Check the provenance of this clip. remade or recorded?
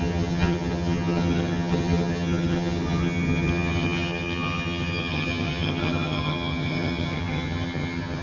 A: remade